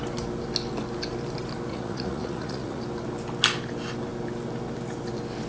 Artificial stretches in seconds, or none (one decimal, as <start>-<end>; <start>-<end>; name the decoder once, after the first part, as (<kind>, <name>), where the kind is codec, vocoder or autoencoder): 1.7-2.8 (vocoder, Vocos)